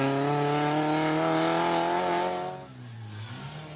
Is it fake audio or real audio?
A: real